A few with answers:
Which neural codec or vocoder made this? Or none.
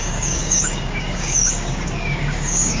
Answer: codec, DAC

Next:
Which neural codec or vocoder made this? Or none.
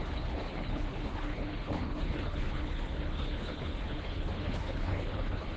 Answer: codec, HILCodec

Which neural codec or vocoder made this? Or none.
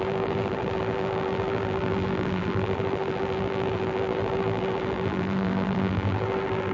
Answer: vocoder, BigVGAN v2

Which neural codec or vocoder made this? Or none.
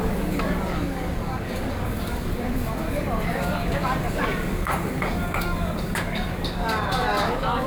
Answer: codec, DAC